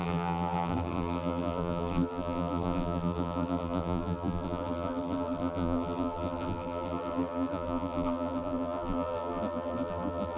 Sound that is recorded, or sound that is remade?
remade